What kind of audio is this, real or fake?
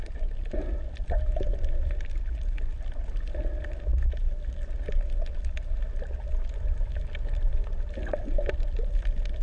real